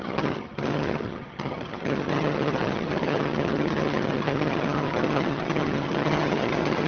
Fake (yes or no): yes